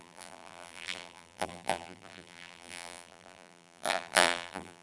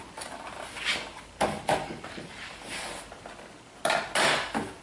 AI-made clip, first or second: first